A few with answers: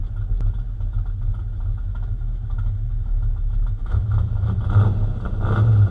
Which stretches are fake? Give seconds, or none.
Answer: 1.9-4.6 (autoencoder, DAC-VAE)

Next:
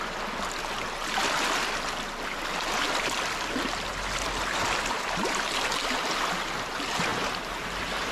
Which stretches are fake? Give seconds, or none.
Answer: 7.1-8.1 (vocoder, BigVGAN v2)